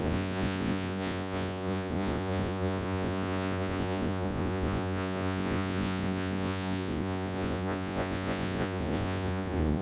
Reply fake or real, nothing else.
fake